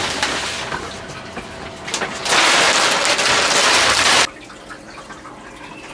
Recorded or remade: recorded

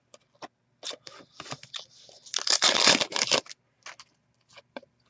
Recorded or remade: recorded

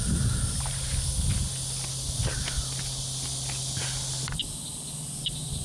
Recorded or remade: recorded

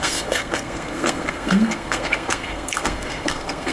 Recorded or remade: remade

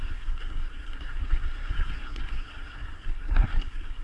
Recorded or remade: remade